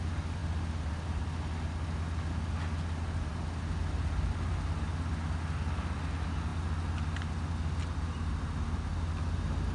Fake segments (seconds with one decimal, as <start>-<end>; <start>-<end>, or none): none